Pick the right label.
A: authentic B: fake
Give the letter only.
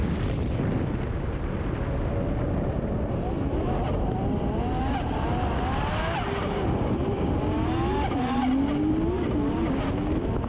A